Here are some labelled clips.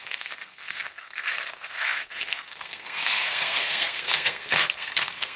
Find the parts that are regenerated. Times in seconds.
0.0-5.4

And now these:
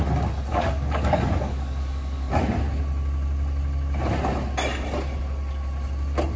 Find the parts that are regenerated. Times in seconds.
0.5-2.3

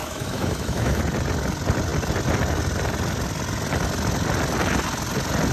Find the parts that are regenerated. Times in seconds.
0.0-1.0

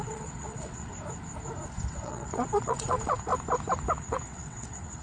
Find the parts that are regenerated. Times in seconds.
0.0-0.9; 1.9-3.3; 3.9-5.0

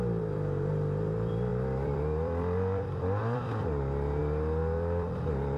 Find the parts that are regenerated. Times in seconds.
0.0-5.6

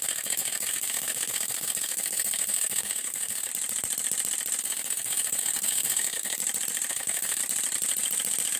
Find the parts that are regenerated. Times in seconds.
0.0-3.5; 4.6-6.4; 6.9-7.4

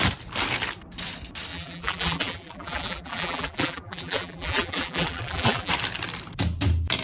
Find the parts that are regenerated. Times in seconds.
1.5-5.7

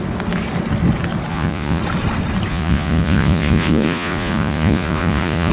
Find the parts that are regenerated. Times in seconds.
1.3-1.8; 2.5-5.5